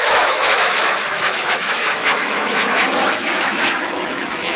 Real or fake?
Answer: fake